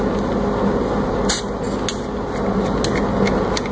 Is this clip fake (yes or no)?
no